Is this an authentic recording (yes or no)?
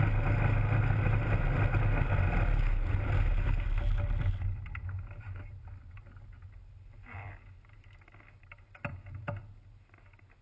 yes